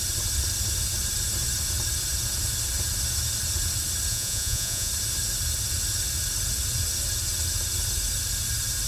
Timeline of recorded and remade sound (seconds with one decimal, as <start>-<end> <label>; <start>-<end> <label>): 0.0-4.1 recorded; 4.1-4.9 remade; 4.9-8.9 recorded